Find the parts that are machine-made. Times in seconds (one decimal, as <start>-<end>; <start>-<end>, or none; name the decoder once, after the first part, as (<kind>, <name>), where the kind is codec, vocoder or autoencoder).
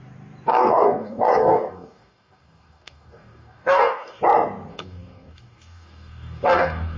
0.5-4.2 (codec, DAC); 4.7-7.0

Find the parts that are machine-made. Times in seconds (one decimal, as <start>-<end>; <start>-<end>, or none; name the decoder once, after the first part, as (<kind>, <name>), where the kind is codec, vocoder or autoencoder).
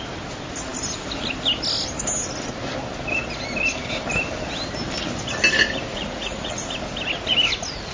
5.9-6.5 (vocoder, Vocos)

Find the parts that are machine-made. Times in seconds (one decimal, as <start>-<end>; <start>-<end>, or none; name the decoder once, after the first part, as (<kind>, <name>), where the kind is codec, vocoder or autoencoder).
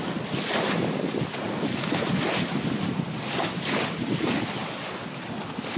none